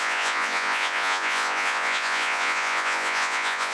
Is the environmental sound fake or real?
fake